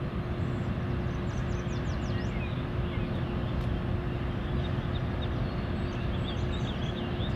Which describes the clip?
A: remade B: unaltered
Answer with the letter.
B